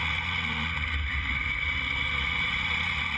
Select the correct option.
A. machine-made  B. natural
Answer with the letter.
A